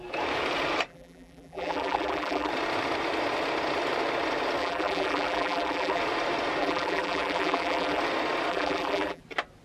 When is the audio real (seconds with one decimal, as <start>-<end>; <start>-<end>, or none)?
0.0-0.9; 2.5-4.6; 6.0-6.6; 8.0-8.5; 9.2-9.6